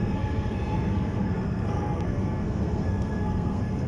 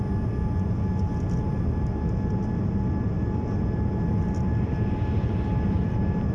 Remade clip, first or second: first